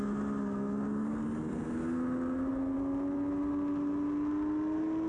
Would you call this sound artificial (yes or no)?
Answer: no